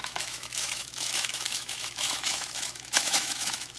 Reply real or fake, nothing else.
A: fake